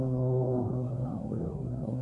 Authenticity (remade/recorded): remade